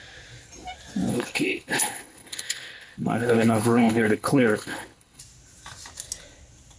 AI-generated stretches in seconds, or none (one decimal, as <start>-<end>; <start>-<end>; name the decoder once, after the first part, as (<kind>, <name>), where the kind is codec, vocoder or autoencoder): 1.1-5.2 (codec, HILCodec)